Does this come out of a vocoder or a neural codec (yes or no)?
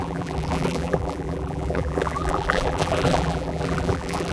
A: yes